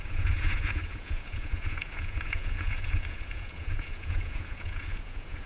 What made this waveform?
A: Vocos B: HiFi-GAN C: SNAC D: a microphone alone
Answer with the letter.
A